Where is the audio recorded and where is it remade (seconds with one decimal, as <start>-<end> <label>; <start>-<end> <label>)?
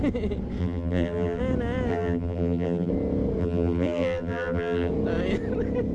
0.0-0.6 recorded; 0.6-1.4 remade; 1.4-1.9 recorded; 1.9-2.9 remade; 2.9-3.4 recorded; 3.4-4.9 remade; 4.9-5.9 recorded